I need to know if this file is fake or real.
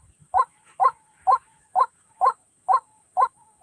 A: fake